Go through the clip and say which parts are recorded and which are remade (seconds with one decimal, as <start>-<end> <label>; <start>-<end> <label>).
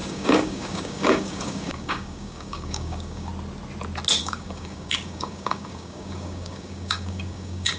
0.0-3.3 remade; 3.3-4.2 recorded; 4.2-7.8 remade